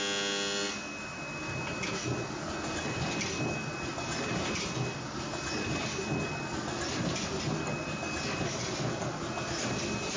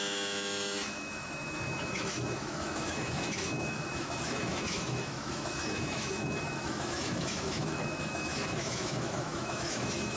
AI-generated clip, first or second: second